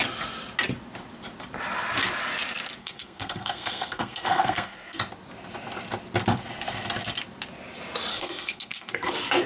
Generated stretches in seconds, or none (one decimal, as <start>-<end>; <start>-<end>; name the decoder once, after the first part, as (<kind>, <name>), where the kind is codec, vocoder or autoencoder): 2.8-5.0 (codec, SNAC); 8.1-9.1